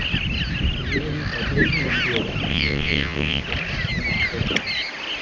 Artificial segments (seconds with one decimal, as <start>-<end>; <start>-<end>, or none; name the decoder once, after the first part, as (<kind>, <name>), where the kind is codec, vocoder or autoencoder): 2.5-3.4 (vocoder, WaveNeXt)